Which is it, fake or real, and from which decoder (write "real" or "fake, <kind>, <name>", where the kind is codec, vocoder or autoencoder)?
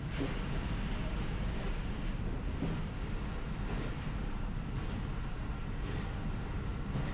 real